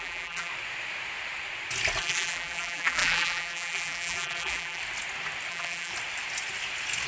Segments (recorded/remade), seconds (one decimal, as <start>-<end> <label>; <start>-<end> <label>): 0.0-0.5 remade; 0.5-2.0 recorded; 2.0-4.8 remade; 4.8-5.5 recorded; 5.5-5.9 remade; 5.9-7.1 recorded